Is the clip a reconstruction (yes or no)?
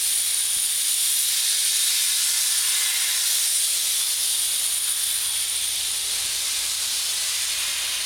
no